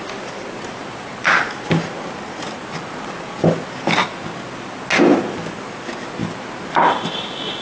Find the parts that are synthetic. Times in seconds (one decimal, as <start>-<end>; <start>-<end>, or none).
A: none